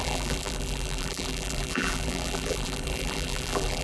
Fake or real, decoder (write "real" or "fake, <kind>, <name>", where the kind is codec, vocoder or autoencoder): fake, vocoder, BigVGAN v2